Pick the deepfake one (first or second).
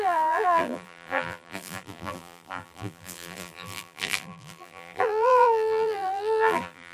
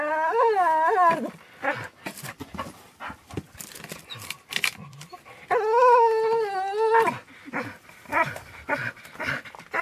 first